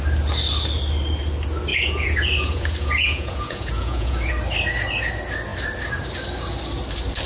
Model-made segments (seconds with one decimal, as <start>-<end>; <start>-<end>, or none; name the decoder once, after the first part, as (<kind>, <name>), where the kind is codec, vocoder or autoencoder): 1.7-4.3 (vocoder, Vocos)